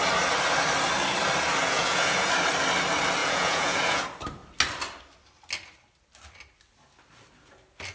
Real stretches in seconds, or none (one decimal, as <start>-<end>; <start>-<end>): 0.0-1.6; 2.3-3.2; 4.0-7.9